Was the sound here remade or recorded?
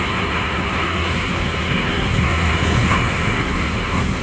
remade